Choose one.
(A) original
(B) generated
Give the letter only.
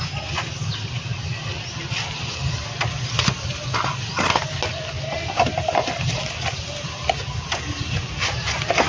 A